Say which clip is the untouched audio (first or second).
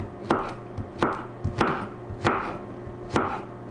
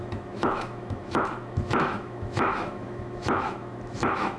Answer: first